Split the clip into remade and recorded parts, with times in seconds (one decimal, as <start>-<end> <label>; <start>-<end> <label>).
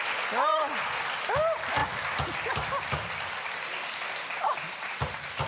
0.0-5.5 recorded